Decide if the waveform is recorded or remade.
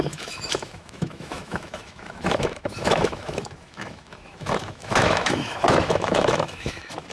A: remade